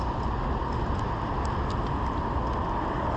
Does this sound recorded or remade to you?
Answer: recorded